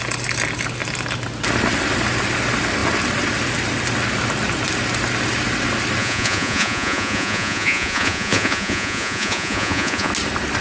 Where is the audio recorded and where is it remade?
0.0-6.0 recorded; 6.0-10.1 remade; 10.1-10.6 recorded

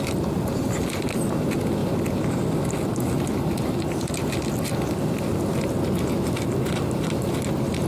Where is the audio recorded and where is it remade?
0.0-7.9 recorded

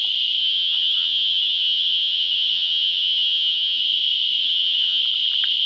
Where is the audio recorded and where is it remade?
0.0-0.4 recorded; 0.4-3.8 remade; 3.8-4.4 recorded; 4.4-5.0 remade; 5.0-5.7 recorded

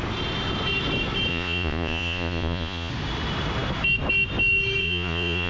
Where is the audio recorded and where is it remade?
0.0-1.3 recorded; 1.3-2.9 remade; 2.9-4.8 recorded; 4.8-5.5 remade

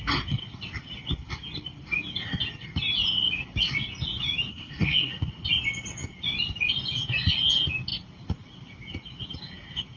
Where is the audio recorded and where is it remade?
0.0-4.5 recorded; 4.5-5.1 remade; 5.1-10.0 recorded

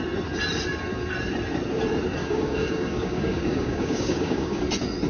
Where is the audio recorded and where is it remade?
0.0-2.2 recorded; 2.2-4.6 remade; 4.6-5.1 recorded

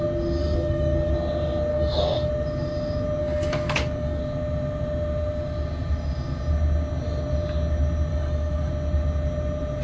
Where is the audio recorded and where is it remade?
0.0-0.4 recorded; 0.4-1.1 remade; 1.1-1.7 recorded; 1.7-2.3 remade; 2.3-3.2 recorded; 3.2-4.2 remade; 4.2-8.1 recorded; 8.1-8.7 remade; 8.7-9.8 recorded

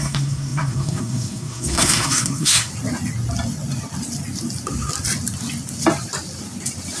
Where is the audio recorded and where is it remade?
0.0-2.7 remade; 2.7-7.0 recorded